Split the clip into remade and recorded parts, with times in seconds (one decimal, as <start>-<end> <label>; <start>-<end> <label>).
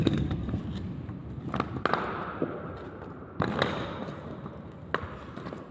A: 0.0-0.6 remade; 0.6-5.7 recorded